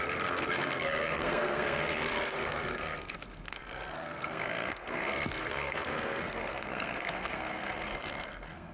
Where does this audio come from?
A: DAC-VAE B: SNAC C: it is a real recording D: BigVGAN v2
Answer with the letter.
B